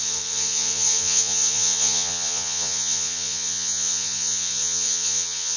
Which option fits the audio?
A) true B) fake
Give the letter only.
B